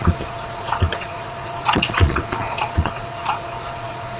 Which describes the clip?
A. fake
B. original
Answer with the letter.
A